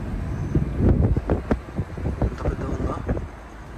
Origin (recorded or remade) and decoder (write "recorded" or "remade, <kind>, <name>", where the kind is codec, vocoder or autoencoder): recorded